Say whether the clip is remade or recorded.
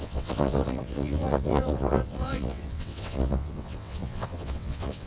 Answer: remade